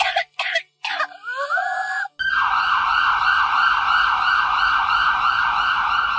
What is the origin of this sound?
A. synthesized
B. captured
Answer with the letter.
B